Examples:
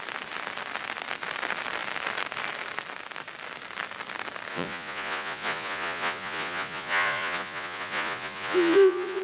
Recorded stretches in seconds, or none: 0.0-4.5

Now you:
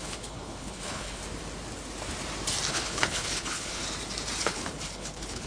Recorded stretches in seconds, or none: 1.2-2.7; 3.8-4.4